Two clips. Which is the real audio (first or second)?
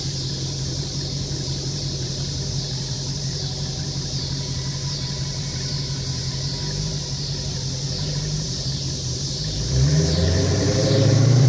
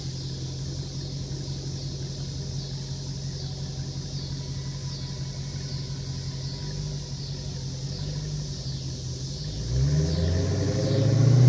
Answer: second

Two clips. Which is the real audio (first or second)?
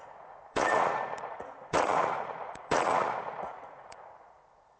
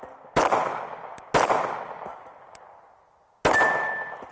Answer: second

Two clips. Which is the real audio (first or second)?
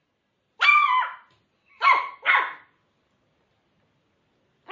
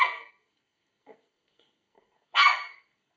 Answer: first